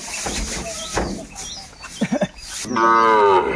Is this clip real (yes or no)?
yes